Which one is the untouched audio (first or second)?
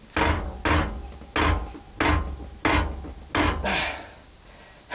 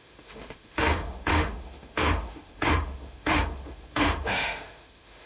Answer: first